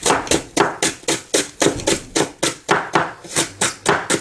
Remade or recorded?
recorded